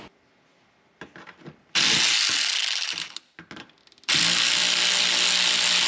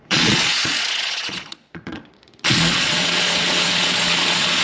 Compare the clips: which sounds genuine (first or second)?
first